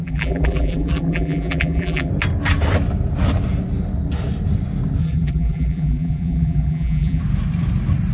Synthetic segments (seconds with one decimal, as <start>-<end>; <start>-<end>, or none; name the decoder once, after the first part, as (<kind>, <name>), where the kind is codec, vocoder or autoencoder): 0.0-2.1 (vocoder, BigVGAN v2); 5.0-7.2